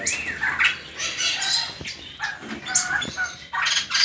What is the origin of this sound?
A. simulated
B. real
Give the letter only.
B